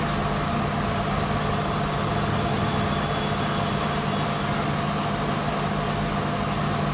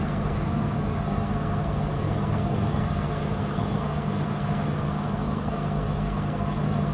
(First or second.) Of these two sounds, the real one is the first